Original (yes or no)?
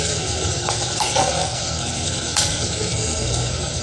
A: no